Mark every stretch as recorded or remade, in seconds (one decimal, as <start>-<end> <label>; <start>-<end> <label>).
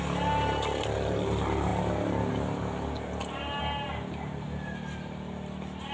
0.0-5.9 recorded